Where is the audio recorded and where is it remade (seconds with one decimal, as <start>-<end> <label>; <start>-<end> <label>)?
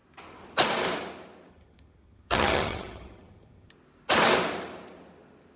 0.0-1.5 recorded; 1.5-3.7 remade; 3.7-5.6 recorded